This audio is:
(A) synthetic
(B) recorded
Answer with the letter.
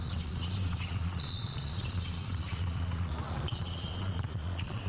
A